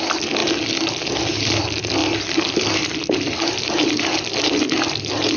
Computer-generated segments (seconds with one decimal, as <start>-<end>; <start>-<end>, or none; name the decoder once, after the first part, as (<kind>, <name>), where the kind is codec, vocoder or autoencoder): none